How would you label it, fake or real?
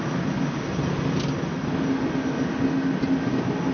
real